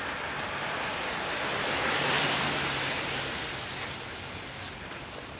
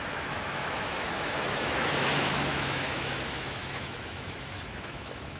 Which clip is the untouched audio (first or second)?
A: first